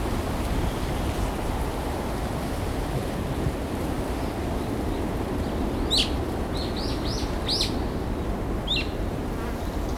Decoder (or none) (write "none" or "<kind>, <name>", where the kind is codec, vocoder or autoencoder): none